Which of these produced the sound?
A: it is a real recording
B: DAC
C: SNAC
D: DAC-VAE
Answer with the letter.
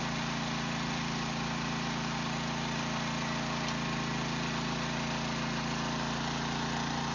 A